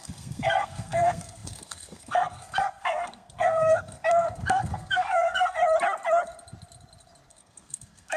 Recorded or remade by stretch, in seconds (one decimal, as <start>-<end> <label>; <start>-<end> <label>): 0.0-5.6 remade; 5.6-7.3 recorded; 7.3-8.2 remade